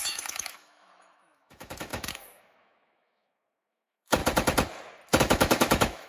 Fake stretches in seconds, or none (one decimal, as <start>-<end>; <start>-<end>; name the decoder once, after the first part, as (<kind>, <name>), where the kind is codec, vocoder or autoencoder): 0.0-4.2 (autoencoder, DAC-VAE); 5.2-6.1